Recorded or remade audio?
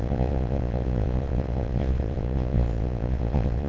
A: remade